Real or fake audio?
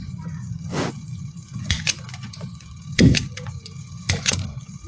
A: fake